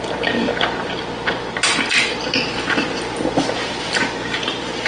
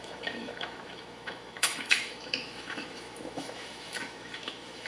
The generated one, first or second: second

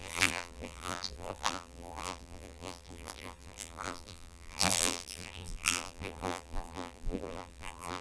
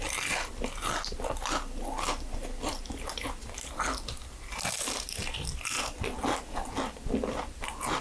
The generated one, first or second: first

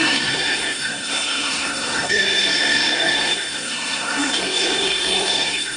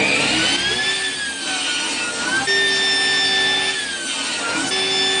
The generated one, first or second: first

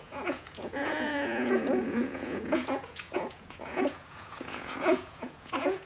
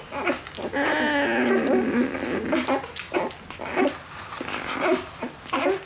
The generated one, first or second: first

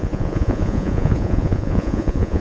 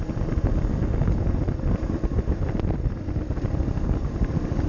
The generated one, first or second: first